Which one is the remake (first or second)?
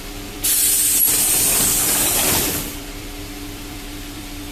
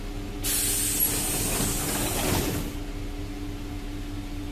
first